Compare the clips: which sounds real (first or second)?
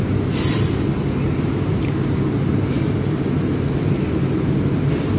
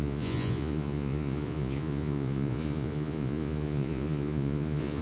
first